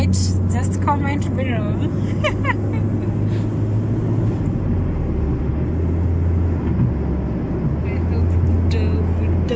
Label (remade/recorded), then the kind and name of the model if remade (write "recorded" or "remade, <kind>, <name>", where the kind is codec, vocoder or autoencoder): recorded